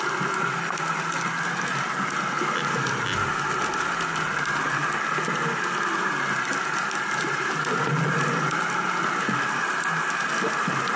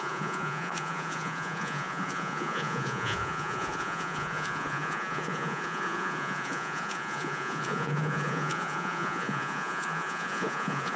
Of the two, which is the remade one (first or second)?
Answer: second